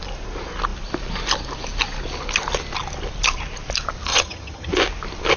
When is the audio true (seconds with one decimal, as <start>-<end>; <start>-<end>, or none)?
0.0-4.1; 4.7-5.4